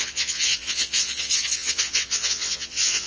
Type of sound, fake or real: fake